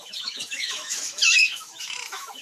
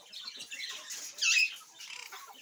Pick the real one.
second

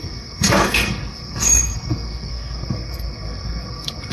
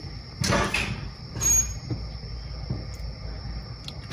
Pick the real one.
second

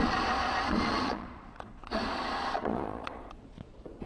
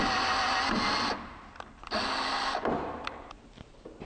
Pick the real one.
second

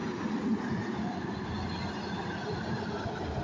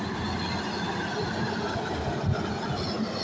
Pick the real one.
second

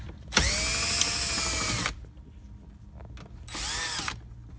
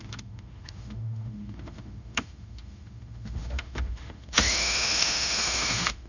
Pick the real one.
first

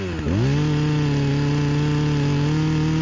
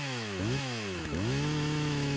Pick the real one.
first